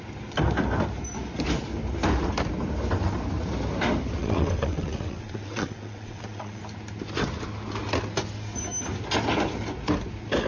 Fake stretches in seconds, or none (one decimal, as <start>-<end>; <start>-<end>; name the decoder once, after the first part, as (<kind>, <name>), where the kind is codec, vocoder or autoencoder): 4.2-6.6 (vocoder, WaveNeXt)

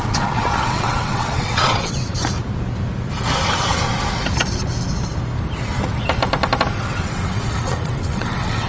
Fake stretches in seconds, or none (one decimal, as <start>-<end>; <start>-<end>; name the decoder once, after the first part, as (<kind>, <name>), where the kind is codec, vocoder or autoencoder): 0.0-2.1 (vocoder, WaveNeXt); 3.5-3.9; 6.8-8.7

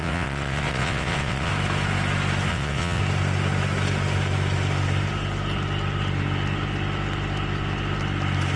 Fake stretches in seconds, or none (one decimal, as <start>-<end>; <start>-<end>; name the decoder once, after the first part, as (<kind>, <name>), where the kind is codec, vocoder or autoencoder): 0.0-1.5 (vocoder, WaveNeXt); 2.5-3.0

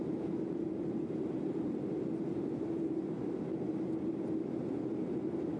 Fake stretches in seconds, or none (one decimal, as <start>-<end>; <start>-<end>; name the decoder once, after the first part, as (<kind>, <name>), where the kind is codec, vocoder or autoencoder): none

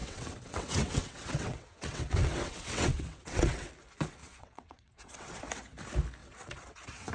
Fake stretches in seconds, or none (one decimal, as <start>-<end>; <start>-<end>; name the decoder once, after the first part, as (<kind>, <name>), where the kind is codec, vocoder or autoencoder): 0.0-3.7 (vocoder, WaveNeXt); 4.2-5.4; 6.2-7.1

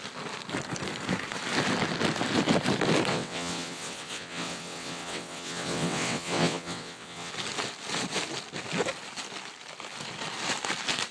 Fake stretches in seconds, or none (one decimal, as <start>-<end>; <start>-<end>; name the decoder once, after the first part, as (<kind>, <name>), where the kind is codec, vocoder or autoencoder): 3.1-7.3 (vocoder, WaveNeXt)